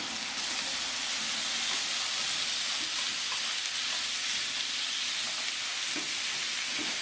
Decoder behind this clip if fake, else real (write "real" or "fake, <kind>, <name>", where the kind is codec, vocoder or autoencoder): real